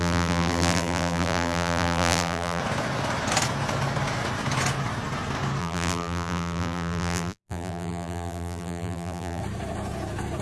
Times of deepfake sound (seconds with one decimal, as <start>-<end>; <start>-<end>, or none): 0.0-2.6; 5.6-9.4